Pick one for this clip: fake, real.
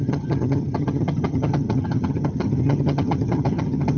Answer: fake